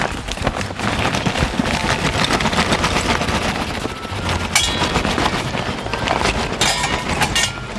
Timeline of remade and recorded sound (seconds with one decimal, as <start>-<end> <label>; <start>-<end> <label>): 0.0-7.8 recorded